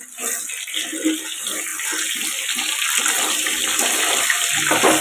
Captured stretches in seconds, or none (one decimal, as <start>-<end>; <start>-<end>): 0.0-5.0